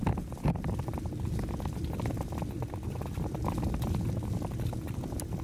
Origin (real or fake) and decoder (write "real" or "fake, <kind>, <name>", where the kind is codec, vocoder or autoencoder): real